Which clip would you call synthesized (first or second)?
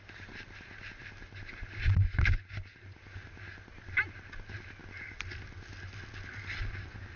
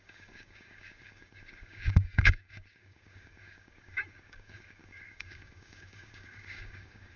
second